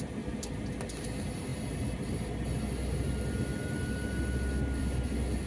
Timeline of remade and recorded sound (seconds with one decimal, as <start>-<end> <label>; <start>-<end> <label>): 0.0-5.5 recorded